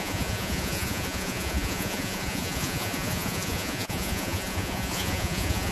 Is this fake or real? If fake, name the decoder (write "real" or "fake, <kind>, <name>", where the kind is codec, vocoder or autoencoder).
fake, vocoder, Vocos